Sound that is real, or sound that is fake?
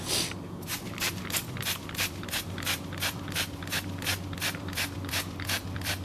fake